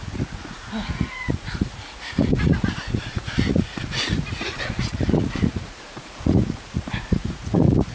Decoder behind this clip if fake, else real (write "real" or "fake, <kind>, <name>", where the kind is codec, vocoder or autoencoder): fake, vocoder, Vocos